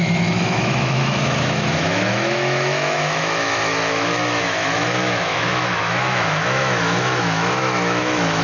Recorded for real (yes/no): no